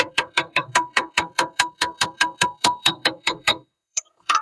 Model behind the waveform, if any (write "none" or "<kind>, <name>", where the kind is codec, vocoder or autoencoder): codec, SNAC